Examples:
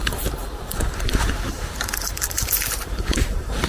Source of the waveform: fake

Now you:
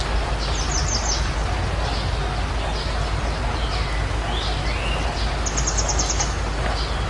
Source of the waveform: real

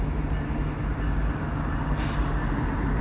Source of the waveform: real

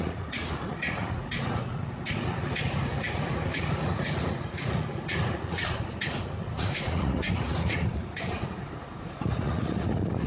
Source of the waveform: fake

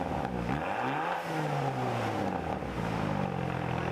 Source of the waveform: real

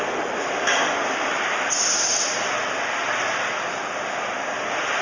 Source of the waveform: real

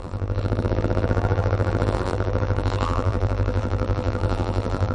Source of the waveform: fake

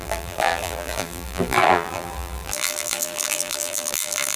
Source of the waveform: fake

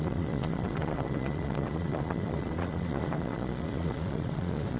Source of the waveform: fake